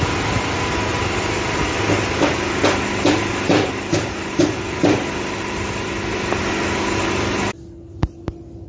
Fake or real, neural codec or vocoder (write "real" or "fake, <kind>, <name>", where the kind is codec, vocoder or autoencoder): real